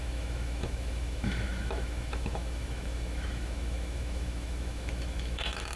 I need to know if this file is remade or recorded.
remade